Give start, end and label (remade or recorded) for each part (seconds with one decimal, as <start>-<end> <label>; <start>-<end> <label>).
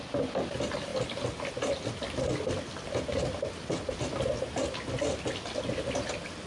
0.0-6.5 recorded